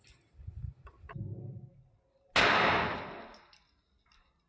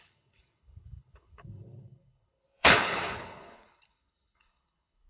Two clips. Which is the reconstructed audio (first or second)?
second